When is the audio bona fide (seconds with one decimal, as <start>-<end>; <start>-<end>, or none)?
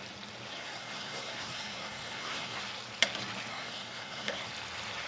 0.0-0.5; 2.6-3.5; 4.5-5.1